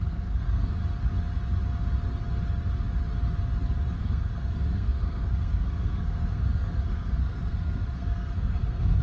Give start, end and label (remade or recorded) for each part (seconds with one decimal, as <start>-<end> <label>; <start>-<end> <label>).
0.0-0.8 remade; 0.8-4.0 recorded; 4.0-9.0 remade